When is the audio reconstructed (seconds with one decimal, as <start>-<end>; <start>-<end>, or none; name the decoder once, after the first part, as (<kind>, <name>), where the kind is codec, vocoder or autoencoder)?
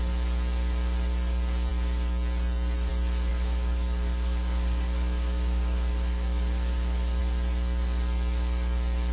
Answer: 3.3-7.2 (codec, DAC)